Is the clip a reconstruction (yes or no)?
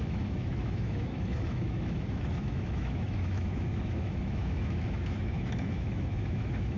yes